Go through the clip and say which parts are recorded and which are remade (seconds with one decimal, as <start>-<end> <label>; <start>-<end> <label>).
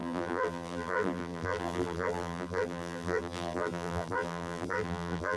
0.0-5.4 remade